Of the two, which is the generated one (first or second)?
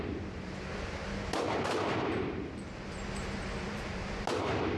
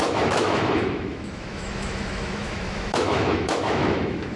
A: second